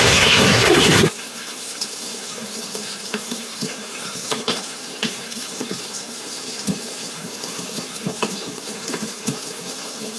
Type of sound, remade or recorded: remade